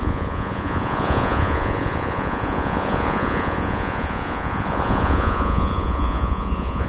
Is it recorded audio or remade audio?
remade